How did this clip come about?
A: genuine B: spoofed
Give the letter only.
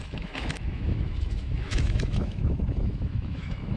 B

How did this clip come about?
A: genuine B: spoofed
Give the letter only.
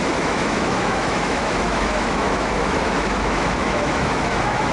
B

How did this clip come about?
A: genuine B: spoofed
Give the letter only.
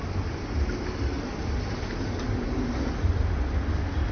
A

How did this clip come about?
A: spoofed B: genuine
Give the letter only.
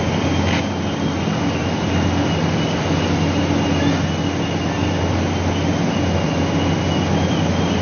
B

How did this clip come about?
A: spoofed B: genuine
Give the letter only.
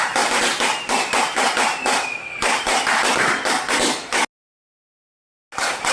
B